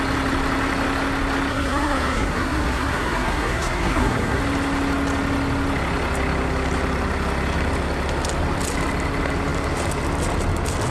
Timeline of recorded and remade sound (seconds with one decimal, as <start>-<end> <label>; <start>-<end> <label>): 0.0-1.5 recorded; 1.5-4.4 remade; 4.4-10.9 recorded